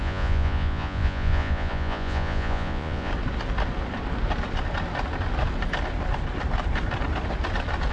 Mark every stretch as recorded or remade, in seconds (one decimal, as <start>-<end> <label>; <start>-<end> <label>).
0.0-3.1 remade; 3.1-7.9 recorded